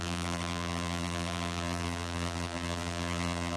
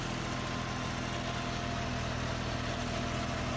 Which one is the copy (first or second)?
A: first